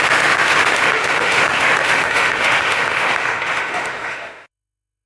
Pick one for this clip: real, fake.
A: fake